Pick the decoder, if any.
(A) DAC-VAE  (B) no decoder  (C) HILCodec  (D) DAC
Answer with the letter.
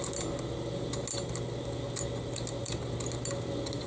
B